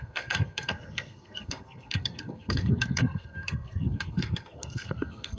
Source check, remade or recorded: remade